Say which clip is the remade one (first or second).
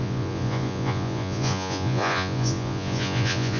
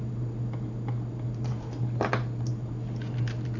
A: first